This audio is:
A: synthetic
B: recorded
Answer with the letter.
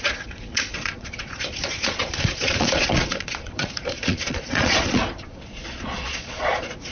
A